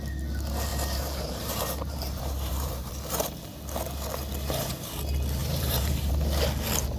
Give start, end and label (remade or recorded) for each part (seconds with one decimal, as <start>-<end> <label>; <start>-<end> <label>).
0.0-0.7 recorded; 0.7-2.9 remade; 2.9-5.4 recorded; 5.4-6.1 remade; 6.1-7.0 recorded